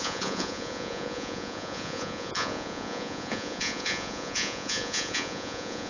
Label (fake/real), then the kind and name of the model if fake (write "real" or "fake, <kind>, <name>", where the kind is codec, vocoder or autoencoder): fake, vocoder, Vocos